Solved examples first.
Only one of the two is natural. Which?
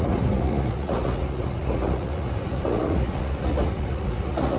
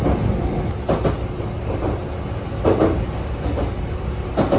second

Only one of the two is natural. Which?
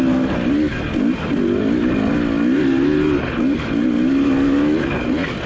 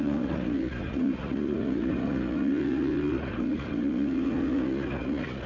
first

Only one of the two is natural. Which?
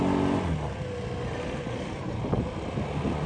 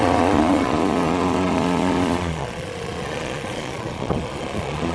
first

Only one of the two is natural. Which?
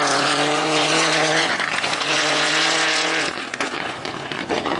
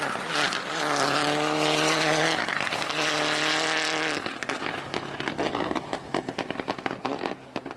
second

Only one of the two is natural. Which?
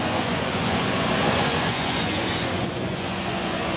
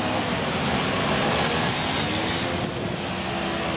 second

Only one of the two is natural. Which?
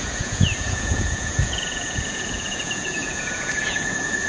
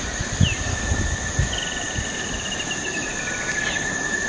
second